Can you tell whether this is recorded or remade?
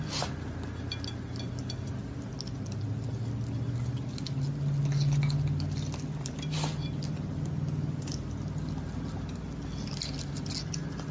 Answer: recorded